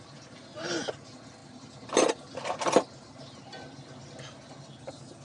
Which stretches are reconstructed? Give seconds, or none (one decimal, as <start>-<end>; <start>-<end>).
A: none